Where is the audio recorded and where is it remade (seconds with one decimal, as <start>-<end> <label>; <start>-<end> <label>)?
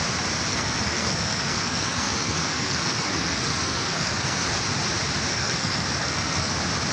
0.0-0.5 recorded; 0.5-4.6 remade; 4.6-5.3 recorded; 5.3-6.5 remade; 6.5-6.9 recorded